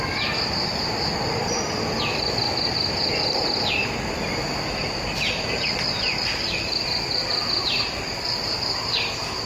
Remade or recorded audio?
recorded